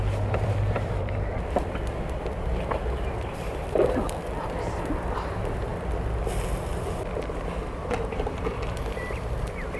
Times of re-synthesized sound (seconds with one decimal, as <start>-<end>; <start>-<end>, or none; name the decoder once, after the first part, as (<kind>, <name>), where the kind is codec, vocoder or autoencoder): 0.0-5.7 (vocoder, BigVGAN v2); 8.1-9.8